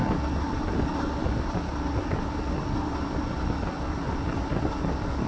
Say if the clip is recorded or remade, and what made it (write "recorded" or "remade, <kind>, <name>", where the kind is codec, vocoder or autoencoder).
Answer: recorded